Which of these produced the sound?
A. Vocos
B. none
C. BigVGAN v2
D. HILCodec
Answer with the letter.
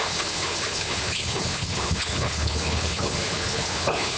D